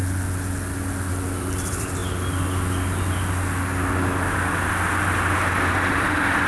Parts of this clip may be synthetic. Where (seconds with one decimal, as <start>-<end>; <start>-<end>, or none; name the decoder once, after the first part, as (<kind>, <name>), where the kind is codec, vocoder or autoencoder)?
1.1-2.0 (vocoder, BigVGAN v2); 5.9-6.5

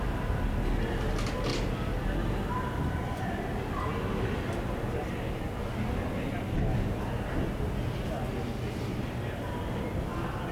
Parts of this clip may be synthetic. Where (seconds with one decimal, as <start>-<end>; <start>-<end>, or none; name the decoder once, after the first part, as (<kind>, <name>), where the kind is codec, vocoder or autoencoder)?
none

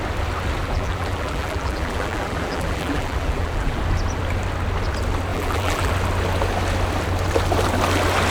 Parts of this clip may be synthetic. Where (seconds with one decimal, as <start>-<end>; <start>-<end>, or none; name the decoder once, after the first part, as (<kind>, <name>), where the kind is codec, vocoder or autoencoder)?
0.6-3.8 (vocoder, BigVGAN v2); 5.3-5.9

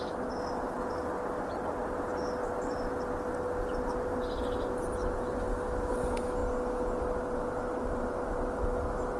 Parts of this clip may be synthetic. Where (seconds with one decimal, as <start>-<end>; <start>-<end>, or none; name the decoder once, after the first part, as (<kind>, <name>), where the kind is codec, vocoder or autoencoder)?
none

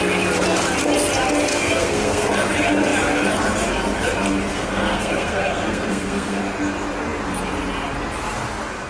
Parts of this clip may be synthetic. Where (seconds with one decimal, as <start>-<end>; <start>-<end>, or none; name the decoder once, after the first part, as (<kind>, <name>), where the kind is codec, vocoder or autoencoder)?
1.5-2.3 (codec, SNAC); 4.5-6.4

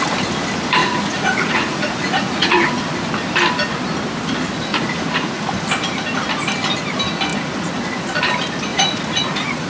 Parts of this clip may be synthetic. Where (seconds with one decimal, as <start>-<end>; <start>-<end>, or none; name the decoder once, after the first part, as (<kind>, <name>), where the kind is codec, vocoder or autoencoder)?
0.8-2.7 (vocoder, Vocos); 4.7-5.4; 8.7-9.7

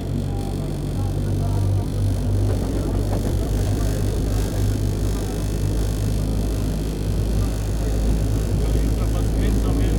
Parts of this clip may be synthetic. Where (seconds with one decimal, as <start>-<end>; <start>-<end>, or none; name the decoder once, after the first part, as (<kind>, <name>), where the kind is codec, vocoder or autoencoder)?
1.9-3.8 (vocoder, BigVGAN v2)

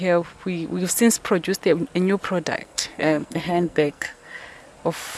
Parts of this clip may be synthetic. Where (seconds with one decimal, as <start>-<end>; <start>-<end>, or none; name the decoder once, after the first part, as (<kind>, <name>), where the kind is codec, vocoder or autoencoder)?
2.6-4.4 (codec, SNAC)